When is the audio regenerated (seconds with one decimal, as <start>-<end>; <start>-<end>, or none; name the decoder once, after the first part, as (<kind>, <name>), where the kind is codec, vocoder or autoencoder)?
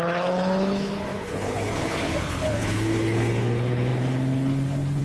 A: 0.0-5.0 (codec, HILCodec)